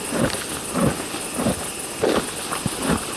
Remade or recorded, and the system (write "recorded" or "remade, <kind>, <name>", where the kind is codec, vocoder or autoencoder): recorded